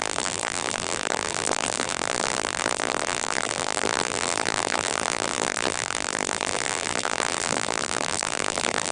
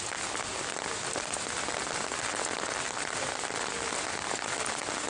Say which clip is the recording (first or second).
second